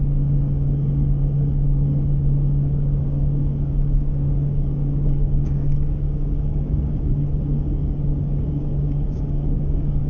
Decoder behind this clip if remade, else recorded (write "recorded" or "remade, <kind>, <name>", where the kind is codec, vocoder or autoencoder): remade, codec, DAC